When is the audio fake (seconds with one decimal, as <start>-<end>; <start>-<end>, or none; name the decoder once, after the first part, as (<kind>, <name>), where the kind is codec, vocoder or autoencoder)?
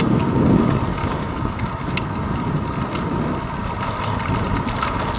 1.0-1.8 (codec, DAC)